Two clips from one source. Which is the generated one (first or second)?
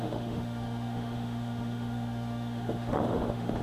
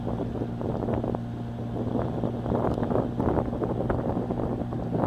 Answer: first